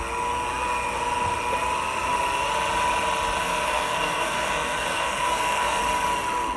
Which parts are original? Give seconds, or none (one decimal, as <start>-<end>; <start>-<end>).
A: 0.0-3.4; 5.8-6.6